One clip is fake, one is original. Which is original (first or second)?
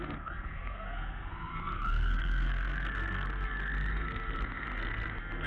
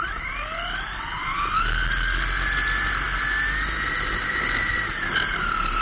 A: second